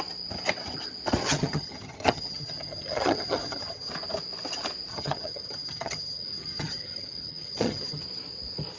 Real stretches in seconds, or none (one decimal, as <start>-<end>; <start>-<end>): 0.0-1.2; 3.9-4.9; 8.0-8.8